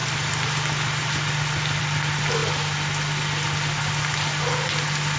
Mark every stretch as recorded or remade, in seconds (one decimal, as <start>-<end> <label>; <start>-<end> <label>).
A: 0.0-5.2 recorded